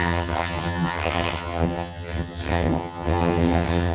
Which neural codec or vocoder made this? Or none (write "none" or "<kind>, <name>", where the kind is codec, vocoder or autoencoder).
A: vocoder, HiFi-GAN